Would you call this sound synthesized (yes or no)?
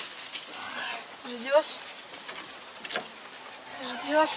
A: no